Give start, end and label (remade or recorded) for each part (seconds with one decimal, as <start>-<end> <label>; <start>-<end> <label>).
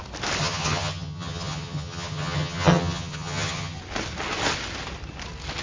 0.0-0.4 recorded; 0.4-3.8 remade; 3.8-5.6 recorded